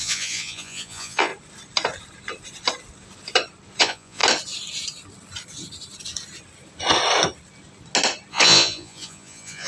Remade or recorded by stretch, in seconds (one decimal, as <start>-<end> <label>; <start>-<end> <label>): 0.0-1.3 remade; 1.3-3.8 recorded; 3.8-4.2 remade; 4.2-8.3 recorded; 8.3-9.7 remade